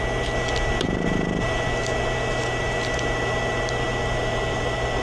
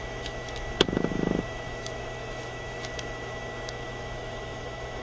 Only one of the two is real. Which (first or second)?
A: first